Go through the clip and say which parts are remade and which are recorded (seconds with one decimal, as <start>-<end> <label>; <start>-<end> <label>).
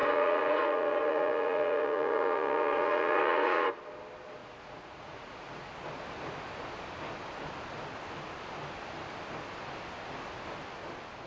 0.0-3.7 remade; 3.7-4.4 recorded; 4.4-5.7 remade; 5.7-11.3 recorded